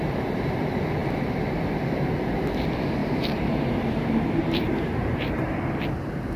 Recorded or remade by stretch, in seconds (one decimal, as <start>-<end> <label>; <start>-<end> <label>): 0.0-3.0 recorded; 3.0-5.5 remade; 5.5-6.4 recorded